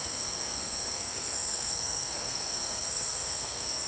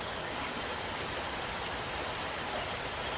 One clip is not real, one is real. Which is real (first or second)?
second